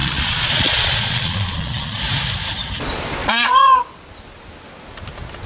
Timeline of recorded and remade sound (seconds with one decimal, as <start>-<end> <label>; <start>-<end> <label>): 0.0-2.0 remade; 2.0-3.2 recorded; 3.2-3.9 remade; 3.9-5.5 recorded